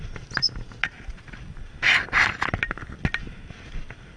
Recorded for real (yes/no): yes